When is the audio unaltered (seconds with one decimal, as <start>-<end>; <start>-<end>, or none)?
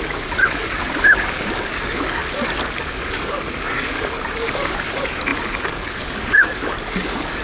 2.2-2.8